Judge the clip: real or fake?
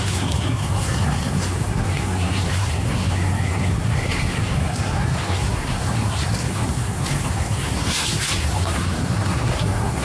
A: fake